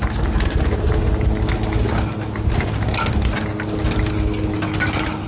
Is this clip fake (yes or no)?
no